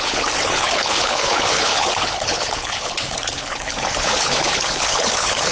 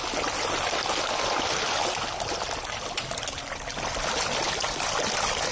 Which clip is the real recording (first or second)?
second